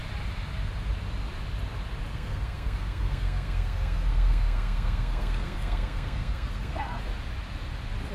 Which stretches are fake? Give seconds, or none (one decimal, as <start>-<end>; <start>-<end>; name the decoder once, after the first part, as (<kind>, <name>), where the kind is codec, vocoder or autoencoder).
2.1-7.0 (codec, SNAC)